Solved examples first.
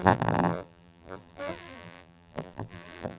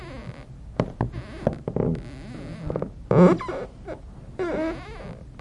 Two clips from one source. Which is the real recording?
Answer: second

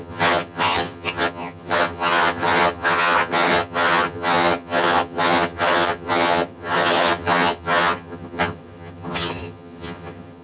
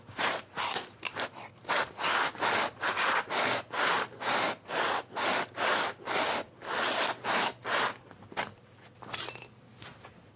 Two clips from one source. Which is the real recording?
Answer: second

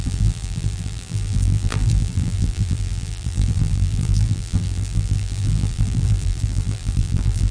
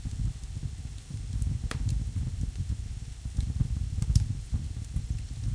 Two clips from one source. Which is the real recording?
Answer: second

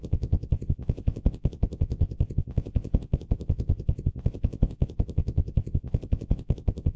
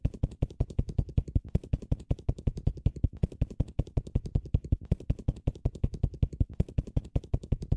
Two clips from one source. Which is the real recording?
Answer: second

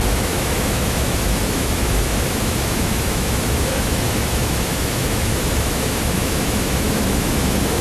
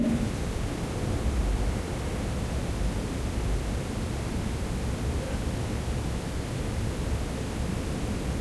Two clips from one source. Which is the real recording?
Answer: second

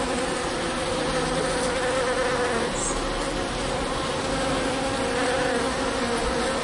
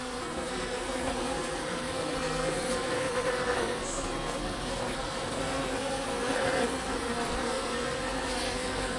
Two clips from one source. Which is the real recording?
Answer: first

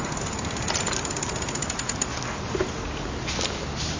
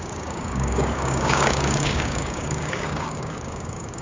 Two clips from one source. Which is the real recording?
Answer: first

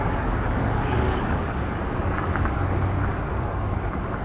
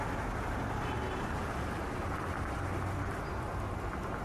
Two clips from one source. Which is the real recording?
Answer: second